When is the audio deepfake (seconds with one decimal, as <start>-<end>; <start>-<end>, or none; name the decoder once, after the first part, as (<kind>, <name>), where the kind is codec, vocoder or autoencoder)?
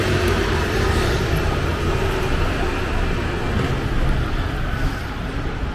0.0-1.7 (vocoder, BigVGAN v2); 5.1-5.7